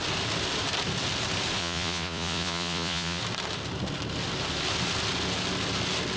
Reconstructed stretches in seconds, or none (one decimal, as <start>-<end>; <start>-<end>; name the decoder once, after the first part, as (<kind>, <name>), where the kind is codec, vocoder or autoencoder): 1.6-3.2 (vocoder, Vocos)